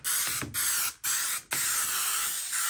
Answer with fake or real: real